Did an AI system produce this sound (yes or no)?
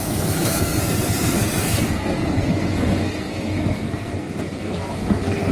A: yes